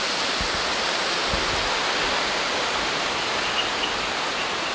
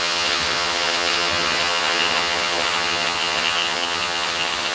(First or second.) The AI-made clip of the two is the second